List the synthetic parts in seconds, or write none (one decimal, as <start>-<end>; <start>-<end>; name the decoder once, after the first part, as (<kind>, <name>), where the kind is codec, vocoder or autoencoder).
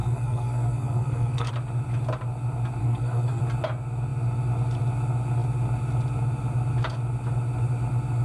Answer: 0.0-1.5 (codec, SNAC); 2.8-3.4